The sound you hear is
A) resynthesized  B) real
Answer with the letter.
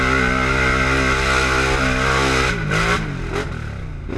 B